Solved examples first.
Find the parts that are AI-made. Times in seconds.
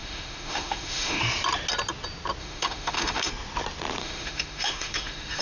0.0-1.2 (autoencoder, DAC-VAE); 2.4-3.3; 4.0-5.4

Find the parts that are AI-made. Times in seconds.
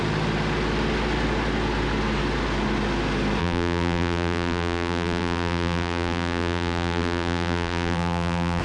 3.4-8.6 (vocoder, BigVGAN v2)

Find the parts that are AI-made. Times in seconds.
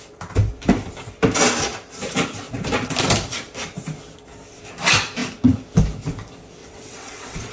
6.6-7.5 (vocoder, WaveNeXt)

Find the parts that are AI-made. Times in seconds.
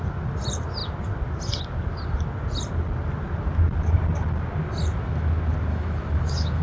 5.7-6.6 (autoencoder, DAC-VAE)